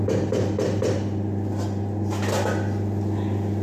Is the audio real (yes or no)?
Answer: yes